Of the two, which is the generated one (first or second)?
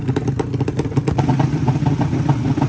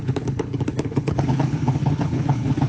second